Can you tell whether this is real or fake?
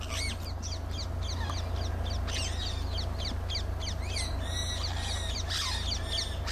real